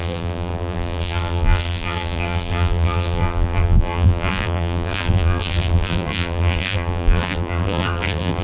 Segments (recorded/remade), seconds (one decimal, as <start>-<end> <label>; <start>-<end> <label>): 0.0-8.4 remade